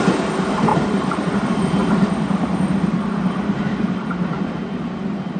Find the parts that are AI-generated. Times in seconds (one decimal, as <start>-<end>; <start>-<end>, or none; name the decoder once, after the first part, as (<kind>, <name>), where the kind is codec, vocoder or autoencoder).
0.7-1.3 (vocoder, BigVGAN v2)